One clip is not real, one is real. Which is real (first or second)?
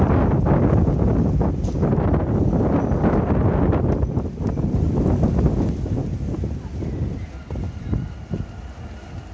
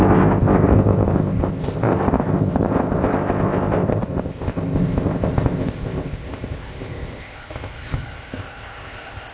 first